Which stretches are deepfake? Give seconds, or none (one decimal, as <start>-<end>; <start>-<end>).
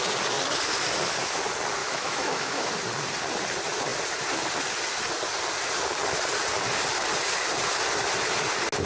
1.8-2.7